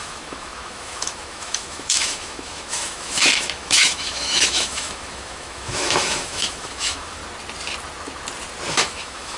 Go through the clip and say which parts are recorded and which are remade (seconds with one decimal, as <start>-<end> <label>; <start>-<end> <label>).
0.0-7.2 remade; 7.2-8.7 recorded; 8.7-9.4 remade